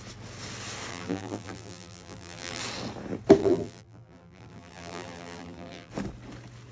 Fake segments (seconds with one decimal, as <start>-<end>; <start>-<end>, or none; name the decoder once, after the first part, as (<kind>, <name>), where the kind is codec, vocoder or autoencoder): 0.9-2.6 (vocoder, BigVGAN v2); 3.4-5.9